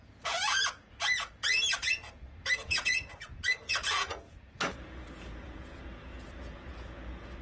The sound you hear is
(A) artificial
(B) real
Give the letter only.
A